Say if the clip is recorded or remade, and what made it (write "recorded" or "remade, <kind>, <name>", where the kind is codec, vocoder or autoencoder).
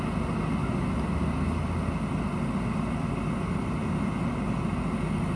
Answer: recorded